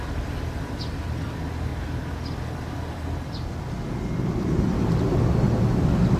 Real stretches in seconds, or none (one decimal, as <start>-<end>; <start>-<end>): 0.0-6.2